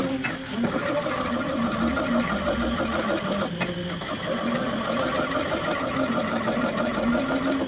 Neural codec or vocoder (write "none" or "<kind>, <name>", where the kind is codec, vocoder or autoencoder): none